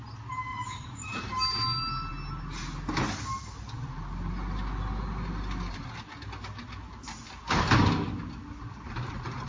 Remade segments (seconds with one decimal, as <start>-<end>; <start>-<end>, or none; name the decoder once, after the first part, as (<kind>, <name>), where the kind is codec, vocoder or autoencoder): 0.5-1.2 (vocoder, Vocos)